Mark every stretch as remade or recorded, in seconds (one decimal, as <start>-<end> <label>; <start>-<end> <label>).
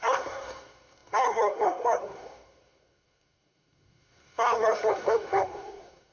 0.0-6.1 remade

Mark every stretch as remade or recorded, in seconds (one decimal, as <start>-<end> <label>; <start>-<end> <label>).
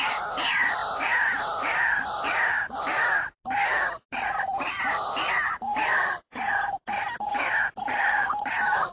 0.0-7.9 recorded; 7.9-8.4 remade; 8.4-8.9 recorded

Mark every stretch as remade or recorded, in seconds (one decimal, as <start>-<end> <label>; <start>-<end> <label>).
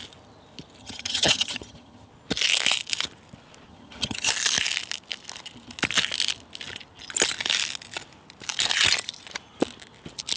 0.0-0.8 recorded; 0.8-2.1 remade; 2.1-3.7 recorded; 3.7-4.3 remade; 4.3-10.4 recorded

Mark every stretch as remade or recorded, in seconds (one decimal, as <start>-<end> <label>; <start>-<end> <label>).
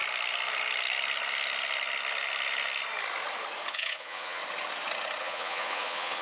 0.0-3.7 recorded; 3.7-4.4 remade; 4.4-5.2 recorded; 5.2-6.2 remade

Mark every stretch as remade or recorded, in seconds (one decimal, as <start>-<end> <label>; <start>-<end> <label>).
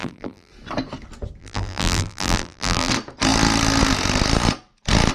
0.0-0.5 remade; 0.5-1.4 recorded; 1.4-2.9 remade; 2.9-5.1 recorded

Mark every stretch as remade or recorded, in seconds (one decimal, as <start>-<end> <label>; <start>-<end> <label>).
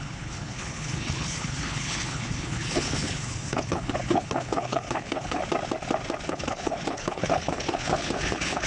0.0-5.4 remade; 5.4-6.3 recorded; 6.3-8.7 remade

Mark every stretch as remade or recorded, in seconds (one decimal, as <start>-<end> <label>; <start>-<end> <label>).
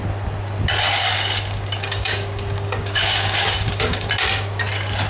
0.0-1.0 recorded; 1.0-4.1 remade; 4.1-5.1 recorded